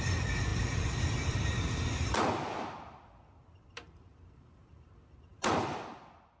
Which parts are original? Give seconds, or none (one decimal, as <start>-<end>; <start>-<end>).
none